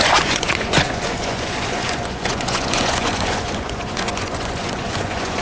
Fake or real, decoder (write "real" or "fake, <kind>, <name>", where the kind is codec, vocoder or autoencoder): fake, vocoder, Vocos